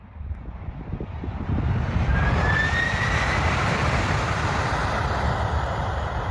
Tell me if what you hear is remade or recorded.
remade